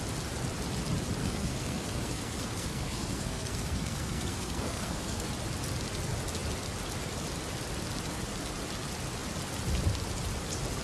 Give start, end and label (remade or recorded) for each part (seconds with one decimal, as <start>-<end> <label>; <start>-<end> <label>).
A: 0.0-1.2 recorded; 1.2-5.3 remade; 5.3-10.8 recorded